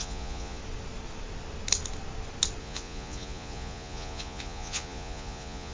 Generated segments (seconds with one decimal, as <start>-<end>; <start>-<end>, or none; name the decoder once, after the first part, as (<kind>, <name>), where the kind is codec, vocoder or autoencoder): 0.0-0.6 (vocoder, Vocos); 2.6-5.7